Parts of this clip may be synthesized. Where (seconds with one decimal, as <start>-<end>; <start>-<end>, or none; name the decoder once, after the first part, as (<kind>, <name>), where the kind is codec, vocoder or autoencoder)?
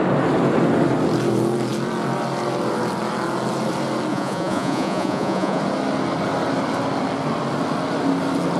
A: 4.1-5.6 (vocoder, Vocos)